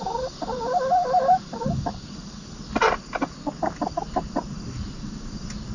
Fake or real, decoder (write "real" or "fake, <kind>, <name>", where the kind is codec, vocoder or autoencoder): real